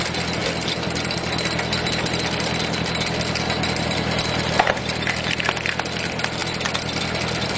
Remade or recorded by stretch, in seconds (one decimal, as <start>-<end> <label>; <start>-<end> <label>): 0.0-7.6 recorded